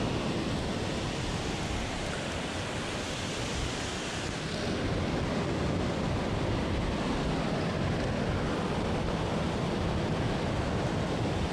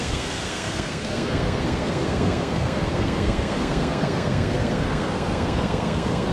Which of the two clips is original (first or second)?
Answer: first